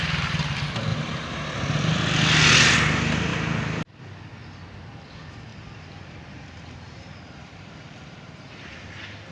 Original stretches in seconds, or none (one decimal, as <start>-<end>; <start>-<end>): 0.0-0.9; 1.9-5.5; 8.5-9.3